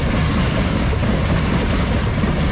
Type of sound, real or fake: real